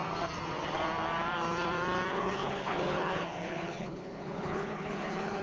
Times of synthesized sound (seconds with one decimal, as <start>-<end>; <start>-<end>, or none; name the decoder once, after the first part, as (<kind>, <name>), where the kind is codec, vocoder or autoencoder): 2.1-5.4 (codec, HILCodec)